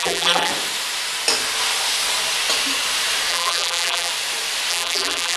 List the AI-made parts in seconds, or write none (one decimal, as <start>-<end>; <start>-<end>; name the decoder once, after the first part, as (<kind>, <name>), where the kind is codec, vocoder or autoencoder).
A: 0.0-0.5 (vocoder, BigVGAN v2); 3.3-4.1; 4.7-5.4